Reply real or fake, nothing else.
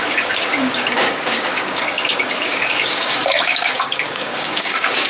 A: fake